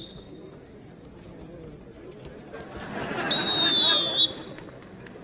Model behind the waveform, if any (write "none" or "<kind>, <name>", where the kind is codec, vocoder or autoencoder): none